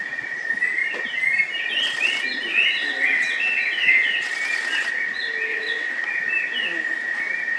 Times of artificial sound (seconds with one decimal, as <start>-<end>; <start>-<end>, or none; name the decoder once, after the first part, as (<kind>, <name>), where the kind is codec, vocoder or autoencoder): 2.5-4.3 (vocoder, WaveNeXt); 5.5-6.0